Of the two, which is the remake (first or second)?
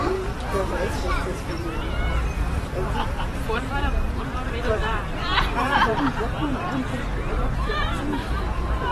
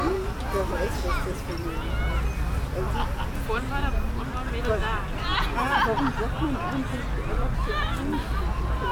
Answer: first